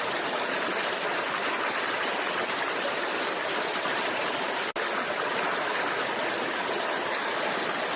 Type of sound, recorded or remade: recorded